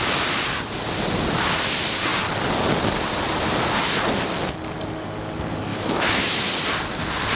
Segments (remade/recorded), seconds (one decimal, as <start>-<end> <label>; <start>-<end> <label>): 0.0-5.7 recorded; 5.7-6.5 remade; 6.5-7.4 recorded